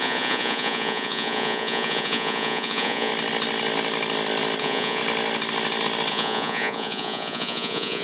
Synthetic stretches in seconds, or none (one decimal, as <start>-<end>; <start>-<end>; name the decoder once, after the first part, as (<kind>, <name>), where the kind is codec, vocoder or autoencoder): 0.0-3.1 (vocoder, Vocos); 4.6-5.0; 6.1-8.0